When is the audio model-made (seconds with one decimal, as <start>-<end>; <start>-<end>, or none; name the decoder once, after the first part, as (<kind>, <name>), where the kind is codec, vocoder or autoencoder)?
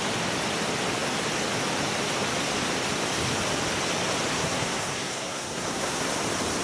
4.3-6.1 (codec, SNAC)